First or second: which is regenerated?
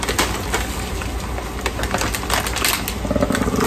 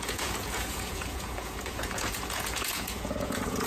second